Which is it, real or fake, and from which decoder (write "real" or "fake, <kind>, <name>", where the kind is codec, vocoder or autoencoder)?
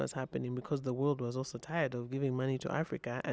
real